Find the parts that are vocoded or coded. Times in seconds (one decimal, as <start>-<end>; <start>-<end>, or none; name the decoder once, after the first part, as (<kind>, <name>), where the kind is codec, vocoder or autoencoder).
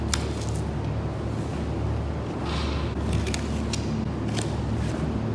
none